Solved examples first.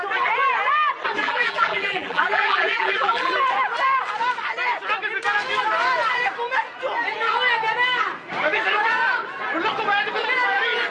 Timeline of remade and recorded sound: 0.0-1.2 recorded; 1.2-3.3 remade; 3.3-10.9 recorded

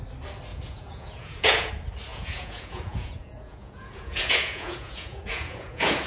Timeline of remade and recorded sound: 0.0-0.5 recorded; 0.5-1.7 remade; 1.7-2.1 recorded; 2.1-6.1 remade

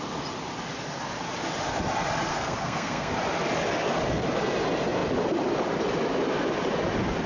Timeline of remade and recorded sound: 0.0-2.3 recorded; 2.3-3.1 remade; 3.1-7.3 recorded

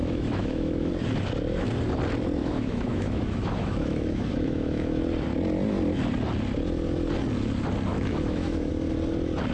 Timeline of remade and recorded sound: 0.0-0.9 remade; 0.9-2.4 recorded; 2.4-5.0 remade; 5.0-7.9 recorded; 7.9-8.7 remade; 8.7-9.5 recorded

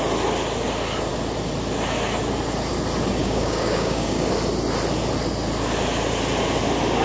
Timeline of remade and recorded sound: 0.0-3.2 recorded; 3.2-4.3 remade; 4.3-7.0 recorded